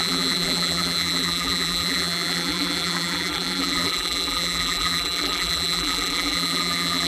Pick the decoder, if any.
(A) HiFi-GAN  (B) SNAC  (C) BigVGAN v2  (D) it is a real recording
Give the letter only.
C